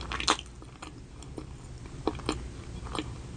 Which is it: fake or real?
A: real